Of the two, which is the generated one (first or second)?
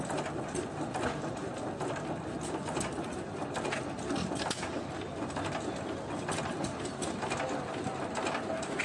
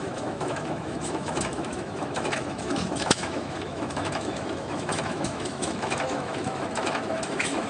second